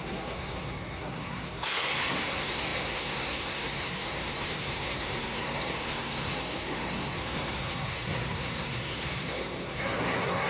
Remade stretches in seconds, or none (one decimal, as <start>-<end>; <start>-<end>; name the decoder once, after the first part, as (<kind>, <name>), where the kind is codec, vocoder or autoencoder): 0.0-10.5 (codec, SNAC)